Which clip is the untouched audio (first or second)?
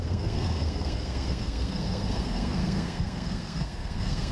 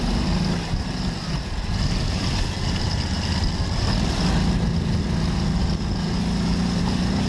second